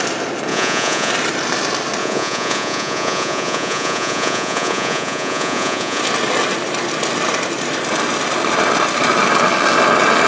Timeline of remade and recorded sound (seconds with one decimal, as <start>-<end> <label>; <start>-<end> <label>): 0.0-0.5 recorded; 0.5-1.1 remade; 1.1-2.0 recorded; 2.0-6.0 remade; 6.0-10.3 recorded